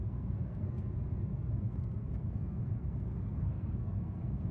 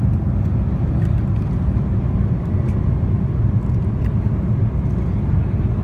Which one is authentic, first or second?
second